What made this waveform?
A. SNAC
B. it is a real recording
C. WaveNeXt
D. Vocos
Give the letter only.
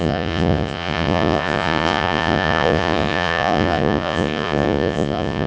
D